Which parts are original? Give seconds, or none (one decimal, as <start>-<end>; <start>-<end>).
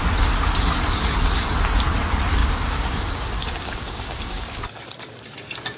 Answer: 0.0-2.4; 4.6-5.8